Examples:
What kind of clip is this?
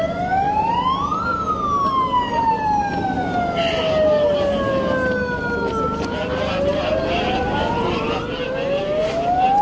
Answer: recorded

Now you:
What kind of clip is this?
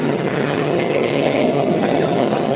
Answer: remade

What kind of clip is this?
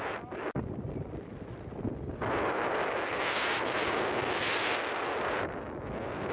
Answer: recorded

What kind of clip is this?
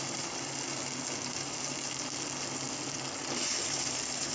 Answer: recorded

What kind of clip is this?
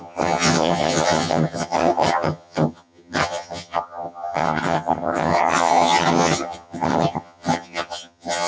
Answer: remade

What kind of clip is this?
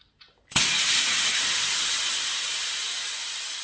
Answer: recorded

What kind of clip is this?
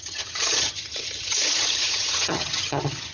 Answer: remade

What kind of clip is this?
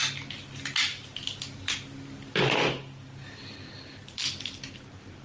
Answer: recorded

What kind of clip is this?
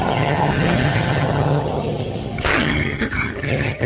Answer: remade